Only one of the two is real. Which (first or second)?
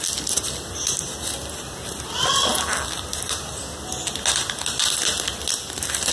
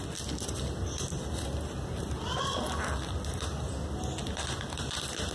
first